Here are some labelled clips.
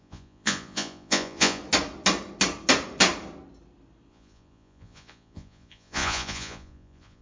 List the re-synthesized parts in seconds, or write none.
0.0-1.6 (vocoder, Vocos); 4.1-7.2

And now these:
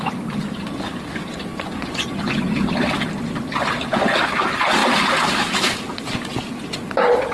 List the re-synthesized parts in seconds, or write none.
1.5-2.4 (vocoder, Vocos)

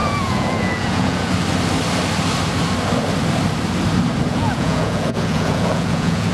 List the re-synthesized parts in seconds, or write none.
0.0-1.3 (vocoder, Vocos); 4.3-6.3

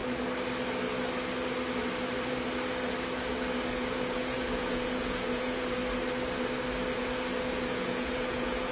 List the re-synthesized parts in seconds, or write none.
3.7-5.8 (vocoder, Vocos); 7.5-8.7

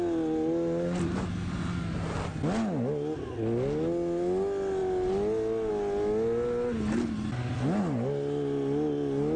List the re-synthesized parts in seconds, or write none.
none

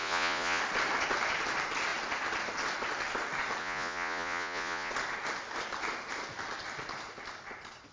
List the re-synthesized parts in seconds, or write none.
0.0-0.6 (vocoder, Vocos); 3.6-4.9

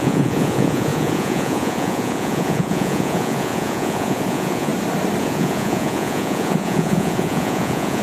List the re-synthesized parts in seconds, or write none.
0.0-4.7 (vocoder, Vocos); 5.2-8.0

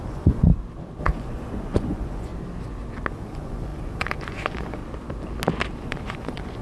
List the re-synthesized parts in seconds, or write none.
0.0-0.5 (vocoder, Vocos); 1.0-2.3; 3.1-4.8; 5.8-6.6